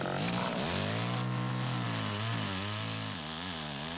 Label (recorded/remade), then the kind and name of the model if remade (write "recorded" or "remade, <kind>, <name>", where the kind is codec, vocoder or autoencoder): recorded